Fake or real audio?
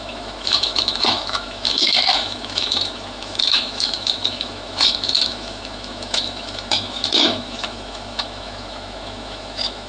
fake